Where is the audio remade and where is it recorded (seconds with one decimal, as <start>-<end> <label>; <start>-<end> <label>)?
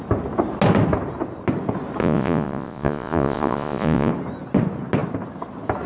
0.0-2.0 recorded; 2.0-4.1 remade; 4.1-5.9 recorded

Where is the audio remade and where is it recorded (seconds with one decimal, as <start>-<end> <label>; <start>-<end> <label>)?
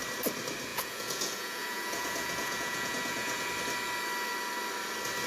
0.0-0.7 recorded; 0.7-3.5 remade; 3.5-5.3 recorded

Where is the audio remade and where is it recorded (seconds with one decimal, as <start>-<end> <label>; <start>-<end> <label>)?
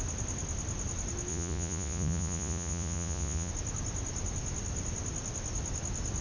0.0-1.3 recorded; 1.3-3.5 remade; 3.5-6.2 recorded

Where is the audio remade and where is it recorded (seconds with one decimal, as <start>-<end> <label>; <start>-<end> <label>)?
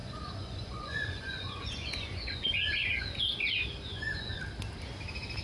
0.0-2.9 remade; 2.9-3.9 recorded; 3.9-4.4 remade; 4.4-5.4 recorded